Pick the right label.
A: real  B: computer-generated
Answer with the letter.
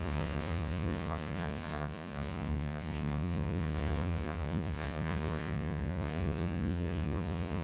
B